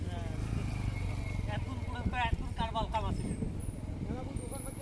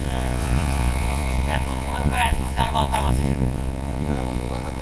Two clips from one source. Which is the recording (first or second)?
first